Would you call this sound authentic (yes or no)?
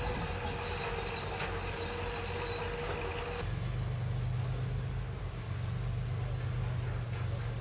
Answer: yes